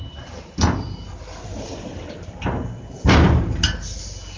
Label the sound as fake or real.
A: real